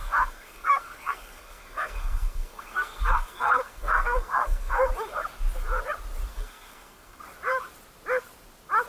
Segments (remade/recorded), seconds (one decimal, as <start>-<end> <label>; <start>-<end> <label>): 0.0-4.9 remade; 4.9-6.3 recorded; 6.3-7.2 remade; 7.2-8.9 recorded